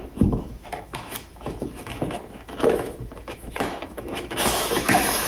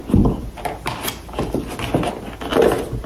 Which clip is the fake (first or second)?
first